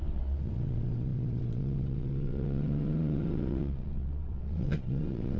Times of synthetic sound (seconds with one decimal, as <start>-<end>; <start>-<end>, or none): 0.0-5.4